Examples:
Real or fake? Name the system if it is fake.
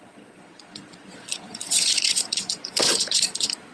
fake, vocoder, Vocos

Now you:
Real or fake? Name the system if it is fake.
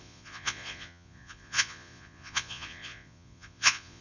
fake, vocoder, Vocos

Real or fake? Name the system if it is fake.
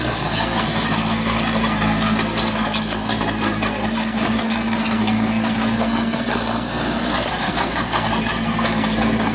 fake, codec, SNAC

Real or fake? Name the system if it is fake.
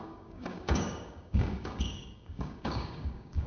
fake, codec, DAC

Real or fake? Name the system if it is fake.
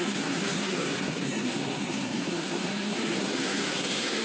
fake, codec, SNAC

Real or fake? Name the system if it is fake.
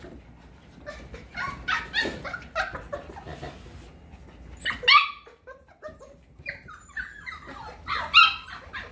real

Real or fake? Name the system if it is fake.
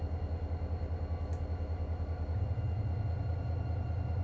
real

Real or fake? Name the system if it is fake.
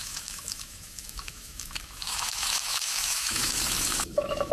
fake, autoencoder, DAC-VAE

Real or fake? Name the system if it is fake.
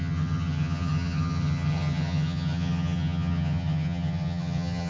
fake, vocoder, HiFi-GAN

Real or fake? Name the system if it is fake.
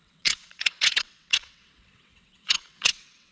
fake, vocoder, WaveNeXt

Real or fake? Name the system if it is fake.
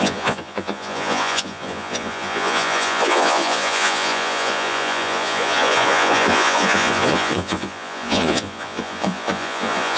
fake, vocoder, Vocos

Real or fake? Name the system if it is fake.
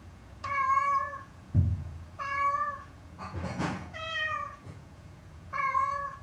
fake, vocoder, Vocos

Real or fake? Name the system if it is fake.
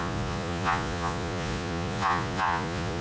fake, vocoder, Vocos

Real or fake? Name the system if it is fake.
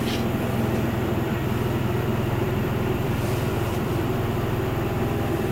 fake, vocoder, BigVGAN v2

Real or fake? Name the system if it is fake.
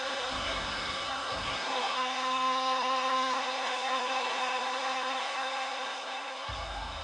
fake, codec, SNAC